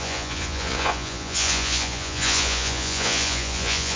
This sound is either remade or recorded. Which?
remade